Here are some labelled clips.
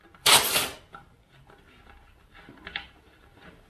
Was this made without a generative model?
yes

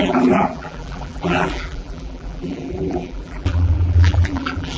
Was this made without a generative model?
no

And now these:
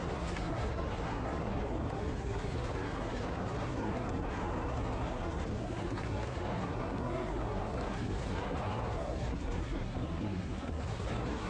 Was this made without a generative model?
no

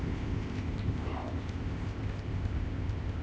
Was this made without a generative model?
no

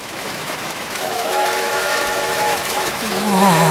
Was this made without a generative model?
no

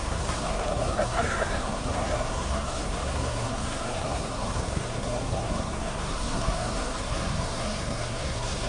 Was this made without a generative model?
no